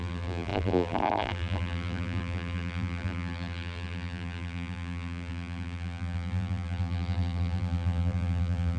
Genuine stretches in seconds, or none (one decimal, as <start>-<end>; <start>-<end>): none